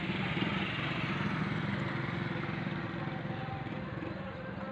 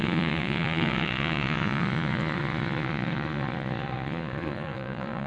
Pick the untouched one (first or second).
first